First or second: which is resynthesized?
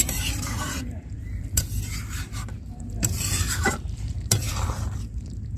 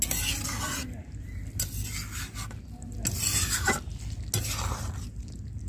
first